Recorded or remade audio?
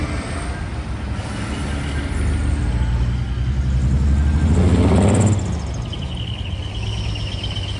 recorded